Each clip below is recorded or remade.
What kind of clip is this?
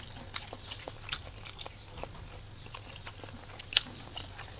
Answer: recorded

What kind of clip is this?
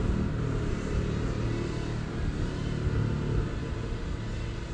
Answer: recorded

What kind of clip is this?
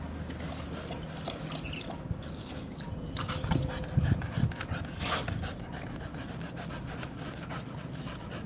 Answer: recorded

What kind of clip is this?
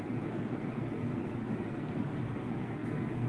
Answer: remade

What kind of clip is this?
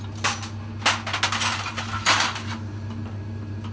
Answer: recorded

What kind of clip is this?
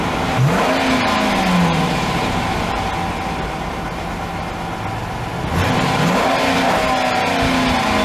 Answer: recorded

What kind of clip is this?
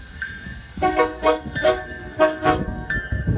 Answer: remade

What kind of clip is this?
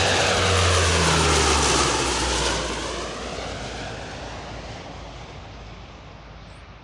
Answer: recorded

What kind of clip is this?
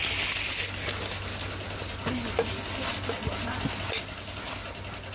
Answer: recorded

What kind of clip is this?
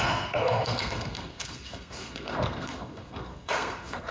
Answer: remade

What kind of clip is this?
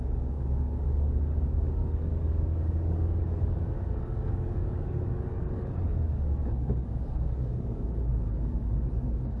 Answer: remade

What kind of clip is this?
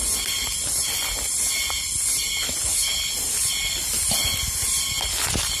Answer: recorded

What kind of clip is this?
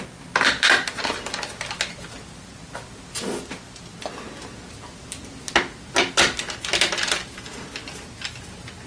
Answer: recorded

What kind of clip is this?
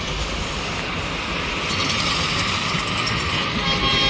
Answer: recorded